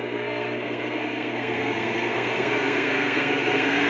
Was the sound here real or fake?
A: fake